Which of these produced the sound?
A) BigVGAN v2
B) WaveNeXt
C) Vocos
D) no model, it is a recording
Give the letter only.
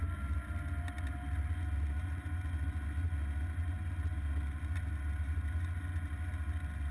D